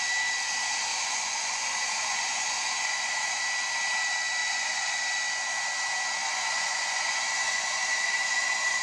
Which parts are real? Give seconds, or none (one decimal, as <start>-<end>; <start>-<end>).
0.0-0.9; 3.4-4.4; 5.0-6.2